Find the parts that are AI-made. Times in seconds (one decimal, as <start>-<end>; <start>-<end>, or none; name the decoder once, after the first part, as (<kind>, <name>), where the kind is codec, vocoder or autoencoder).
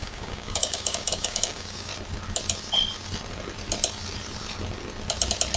0.0-1.9 (codec, DAC)